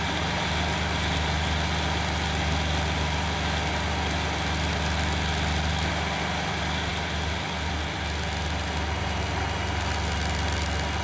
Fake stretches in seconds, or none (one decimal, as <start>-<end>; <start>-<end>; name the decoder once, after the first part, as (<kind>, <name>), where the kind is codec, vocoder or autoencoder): none